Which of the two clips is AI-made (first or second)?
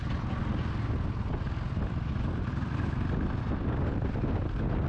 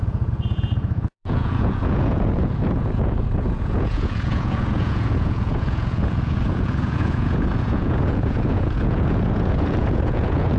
second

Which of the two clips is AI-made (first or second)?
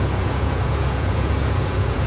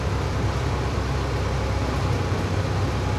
first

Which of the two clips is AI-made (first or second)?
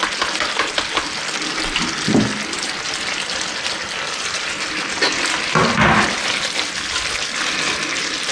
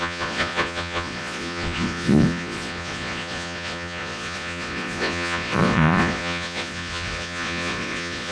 second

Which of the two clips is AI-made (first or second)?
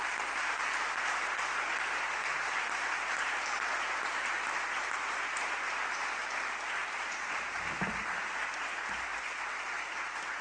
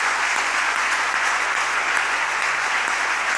second